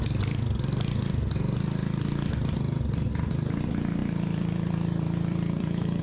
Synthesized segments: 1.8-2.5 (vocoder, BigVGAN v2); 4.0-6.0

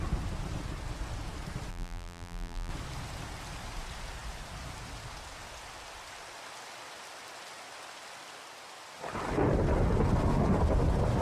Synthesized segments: 1.7-2.7 (vocoder, BigVGAN v2)

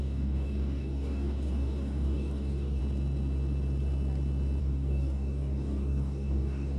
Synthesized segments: 0.0-2.8 (codec, DAC); 4.6-6.8

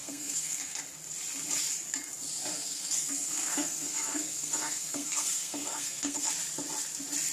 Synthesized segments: 0.0-0.8 (codec, SNAC); 2.5-6.3

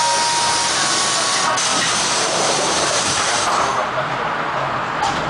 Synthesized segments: 1.7-4.2 (vocoder, BigVGAN v2)

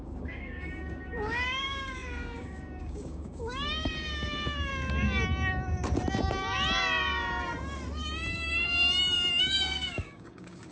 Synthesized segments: 0.0-4.7 (codec, DAC); 9.4-10.7